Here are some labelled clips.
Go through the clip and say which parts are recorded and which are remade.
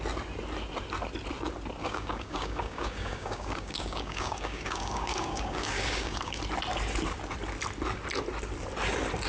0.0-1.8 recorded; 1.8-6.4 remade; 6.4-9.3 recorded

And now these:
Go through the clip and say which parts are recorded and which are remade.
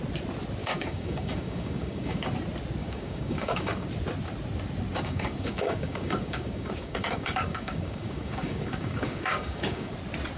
0.0-0.6 recorded; 0.6-2.3 remade; 2.3-2.8 recorded; 2.8-3.9 remade; 3.9-4.9 recorded; 4.9-9.9 remade; 9.9-10.4 recorded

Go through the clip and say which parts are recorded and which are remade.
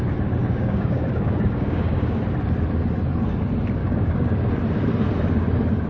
0.0-0.4 recorded; 0.4-2.2 remade; 2.2-3.8 recorded; 3.8-4.5 remade; 4.5-5.9 recorded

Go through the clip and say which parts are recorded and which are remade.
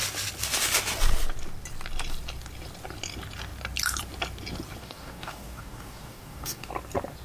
0.0-4.8 recorded; 4.8-6.7 remade; 6.7-7.2 recorded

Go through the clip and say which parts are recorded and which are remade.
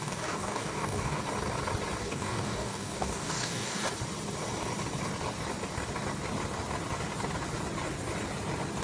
0.0-1.2 remade; 1.2-2.0 recorded; 2.0-3.8 remade; 3.8-8.8 recorded